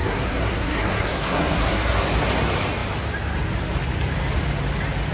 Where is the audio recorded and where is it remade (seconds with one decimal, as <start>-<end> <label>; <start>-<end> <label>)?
0.0-2.0 remade; 2.0-5.1 recorded